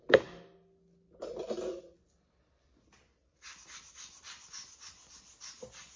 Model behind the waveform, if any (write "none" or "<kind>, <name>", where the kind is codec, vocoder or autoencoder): none